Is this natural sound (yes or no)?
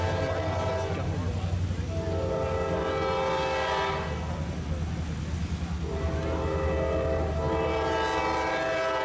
yes